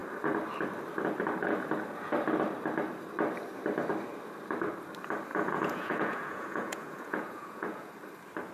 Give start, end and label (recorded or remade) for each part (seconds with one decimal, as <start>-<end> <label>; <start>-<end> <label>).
0.0-5.3 recorded; 5.3-7.9 remade; 7.9-8.5 recorded